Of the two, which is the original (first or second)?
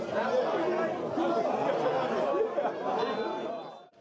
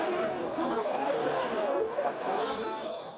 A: first